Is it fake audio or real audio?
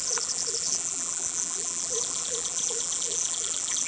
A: fake